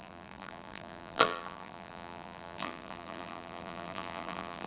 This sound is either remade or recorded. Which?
remade